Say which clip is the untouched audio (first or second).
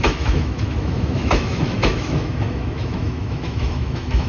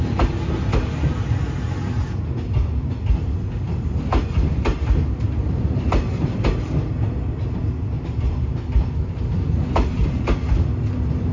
second